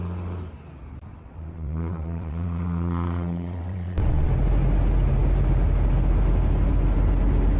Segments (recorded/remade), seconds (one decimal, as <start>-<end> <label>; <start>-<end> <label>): 0.0-1.1 recorded; 1.1-4.3 remade; 4.3-7.6 recorded

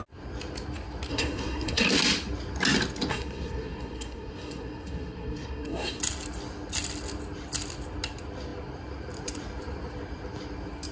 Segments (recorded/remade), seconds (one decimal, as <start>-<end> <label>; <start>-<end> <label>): 0.0-1.1 recorded; 1.1-1.9 remade; 1.9-3.1 recorded; 3.1-6.0 remade; 6.0-10.9 recorded

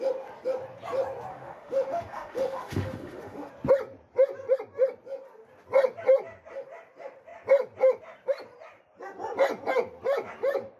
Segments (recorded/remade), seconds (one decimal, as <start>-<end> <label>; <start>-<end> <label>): 0.0-1.3 recorded; 1.3-3.5 remade; 3.5-10.8 recorded

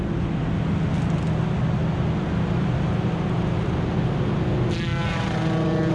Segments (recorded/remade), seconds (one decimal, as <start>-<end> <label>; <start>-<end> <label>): 0.0-5.9 recorded